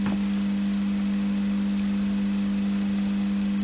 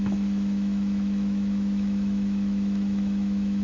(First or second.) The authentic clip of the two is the first